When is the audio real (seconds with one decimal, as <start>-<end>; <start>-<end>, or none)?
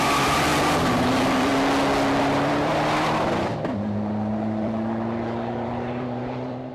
1.5-2.2